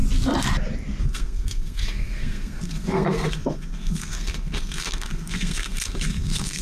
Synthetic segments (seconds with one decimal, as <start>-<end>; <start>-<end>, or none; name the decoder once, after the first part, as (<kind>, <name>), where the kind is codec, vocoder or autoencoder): 1.0-6.6 (codec, SNAC)